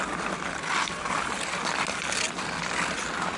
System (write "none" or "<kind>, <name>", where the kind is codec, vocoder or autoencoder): none